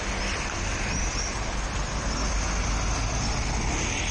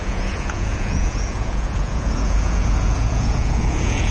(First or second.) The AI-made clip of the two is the second